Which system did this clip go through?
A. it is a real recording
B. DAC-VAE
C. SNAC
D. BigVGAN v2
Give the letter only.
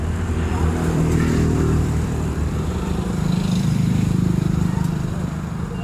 D